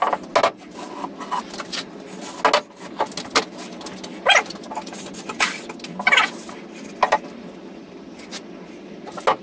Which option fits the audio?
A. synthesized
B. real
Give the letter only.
B